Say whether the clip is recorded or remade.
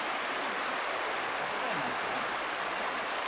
recorded